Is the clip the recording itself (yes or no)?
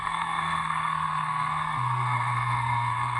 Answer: no